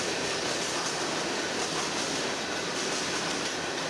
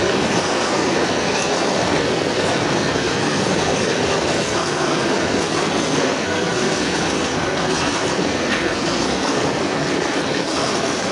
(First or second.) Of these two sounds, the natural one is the first